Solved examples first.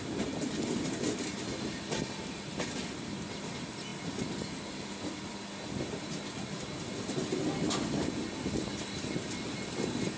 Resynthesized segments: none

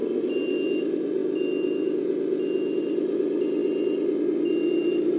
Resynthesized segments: none

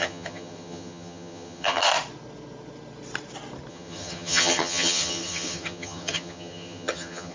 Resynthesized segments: 0.0-1.9 (vocoder, HiFi-GAN); 3.7-7.3

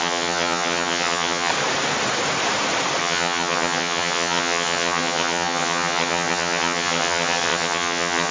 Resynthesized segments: 0.0-1.5 (vocoder, HiFi-GAN); 3.0-8.3

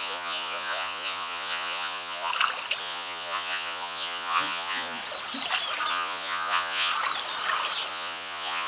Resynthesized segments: 0.0-2.3 (vocoder, Vocos); 2.8-5.0; 5.9-6.9; 7.9-8.7

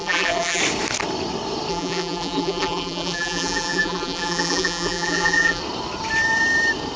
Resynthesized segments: 0.0-0.6 (vocoder, BigVGAN v2); 1.7-5.6

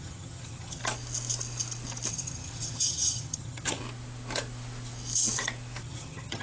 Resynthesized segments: 0.0-0.8 (vocoder, HiFi-GAN); 2.1-3.8; 5.8-6.4

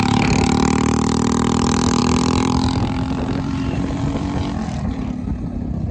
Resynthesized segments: 2.0-4.4 (vocoder, BigVGAN v2)